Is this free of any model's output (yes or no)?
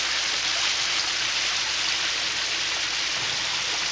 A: yes